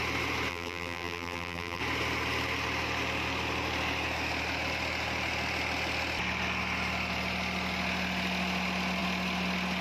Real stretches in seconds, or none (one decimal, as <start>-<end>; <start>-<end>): 0.0-0.5; 1.8-9.8

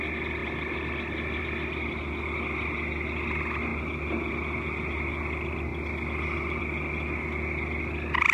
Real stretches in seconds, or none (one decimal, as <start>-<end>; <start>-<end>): 0.0-8.3

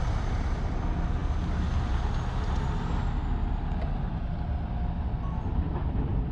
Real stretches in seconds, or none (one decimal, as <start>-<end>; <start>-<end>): 0.0-5.8

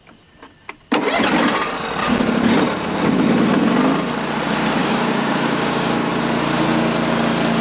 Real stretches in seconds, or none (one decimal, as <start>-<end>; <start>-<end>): 0.0-2.0; 2.5-4.8; 6.1-7.6